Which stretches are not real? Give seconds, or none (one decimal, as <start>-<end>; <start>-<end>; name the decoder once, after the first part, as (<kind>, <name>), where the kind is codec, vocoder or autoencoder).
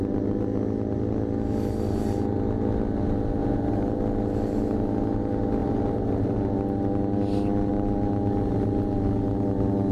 3.4-4.0 (vocoder, BigVGAN v2); 5.6-6.5